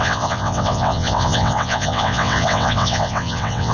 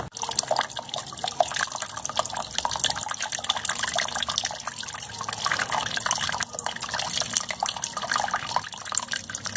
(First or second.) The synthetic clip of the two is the first